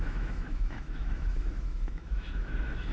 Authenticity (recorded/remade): remade